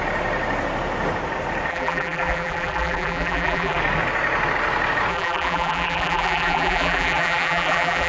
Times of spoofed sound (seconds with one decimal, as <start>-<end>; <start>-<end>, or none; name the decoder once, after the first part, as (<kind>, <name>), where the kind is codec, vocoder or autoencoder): 1.7-3.8 (vocoder, BigVGAN v2); 5.1-8.1